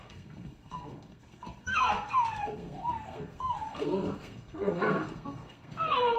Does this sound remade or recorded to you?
remade